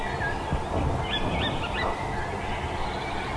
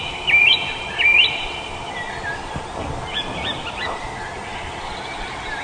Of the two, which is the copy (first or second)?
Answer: second